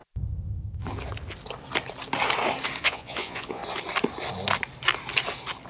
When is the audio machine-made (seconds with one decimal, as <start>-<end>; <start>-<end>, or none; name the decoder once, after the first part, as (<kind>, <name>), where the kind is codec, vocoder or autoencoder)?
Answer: 2.8-3.6 (vocoder, Vocos)